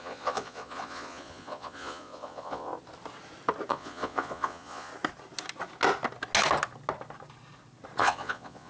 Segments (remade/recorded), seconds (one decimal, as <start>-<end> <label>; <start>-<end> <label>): 0.0-2.7 remade; 2.7-3.7 recorded; 3.7-4.9 remade; 4.9-8.0 recorded; 8.0-8.7 remade